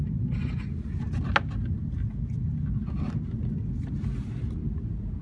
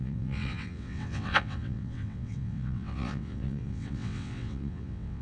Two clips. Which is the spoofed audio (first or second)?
second